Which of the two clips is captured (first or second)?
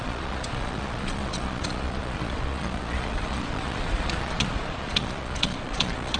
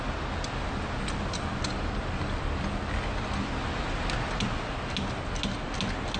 second